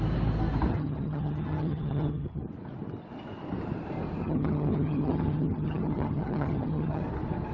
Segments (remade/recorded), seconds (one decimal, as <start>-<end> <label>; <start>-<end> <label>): 0.0-0.7 recorded; 0.7-2.4 remade; 2.4-4.2 recorded; 4.2-7.0 remade; 7.0-7.5 recorded